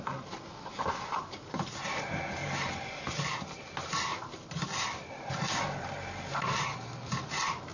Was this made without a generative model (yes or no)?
yes